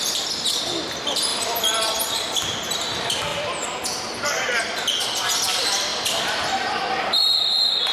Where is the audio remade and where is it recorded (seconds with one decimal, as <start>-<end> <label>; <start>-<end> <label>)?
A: 0.0-7.9 remade